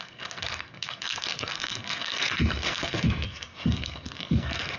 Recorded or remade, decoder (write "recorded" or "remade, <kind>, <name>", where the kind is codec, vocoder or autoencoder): remade, codec, SNAC